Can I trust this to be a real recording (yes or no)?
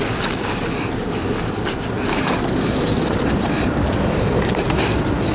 yes